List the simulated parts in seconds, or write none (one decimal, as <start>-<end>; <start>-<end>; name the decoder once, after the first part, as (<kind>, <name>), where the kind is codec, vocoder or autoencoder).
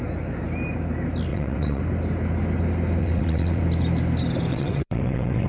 1.3-1.8 (vocoder, WaveNeXt); 3.0-3.6; 4.5-5.5